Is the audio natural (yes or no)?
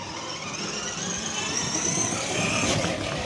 yes